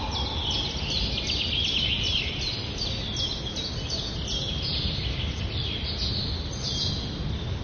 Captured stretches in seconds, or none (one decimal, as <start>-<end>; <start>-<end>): 0.0-7.6